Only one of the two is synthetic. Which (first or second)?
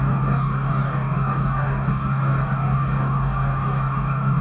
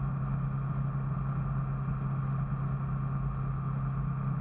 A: first